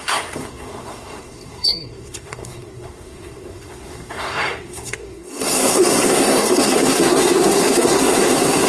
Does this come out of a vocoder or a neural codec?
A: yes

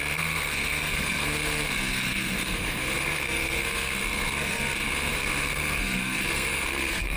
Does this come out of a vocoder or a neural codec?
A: yes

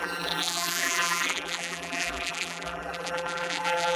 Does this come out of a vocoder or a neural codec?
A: yes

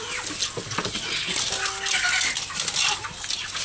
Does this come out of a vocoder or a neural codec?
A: no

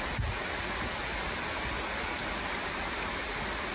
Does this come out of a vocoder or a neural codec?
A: no